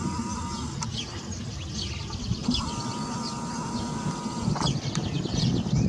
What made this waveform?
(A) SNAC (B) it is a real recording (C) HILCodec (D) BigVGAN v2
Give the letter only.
B